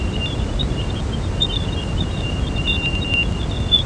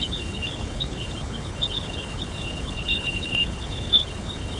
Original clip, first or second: first